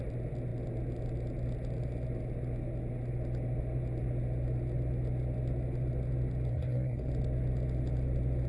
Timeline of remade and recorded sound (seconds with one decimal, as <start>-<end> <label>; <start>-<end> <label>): 0.0-6.5 recorded; 6.5-7.1 remade; 7.1-8.5 recorded